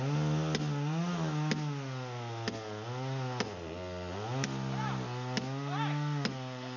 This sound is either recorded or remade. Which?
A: recorded